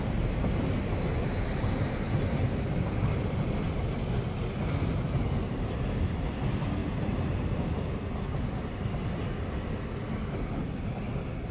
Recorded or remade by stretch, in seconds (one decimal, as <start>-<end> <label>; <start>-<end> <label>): 0.0-11.5 recorded